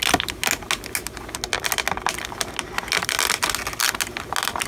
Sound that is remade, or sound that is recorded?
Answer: recorded